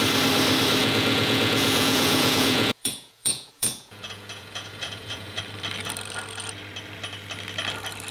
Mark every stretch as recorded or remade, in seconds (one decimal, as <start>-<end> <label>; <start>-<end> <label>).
0.0-0.8 recorded; 0.8-5.4 remade; 5.4-8.1 recorded